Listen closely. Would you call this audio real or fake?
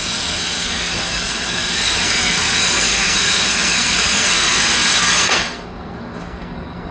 fake